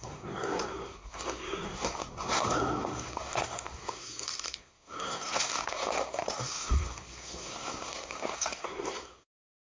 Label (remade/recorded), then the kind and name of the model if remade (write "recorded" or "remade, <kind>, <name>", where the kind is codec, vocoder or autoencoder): remade, codec, SNAC